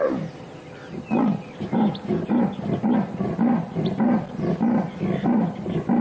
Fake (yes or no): no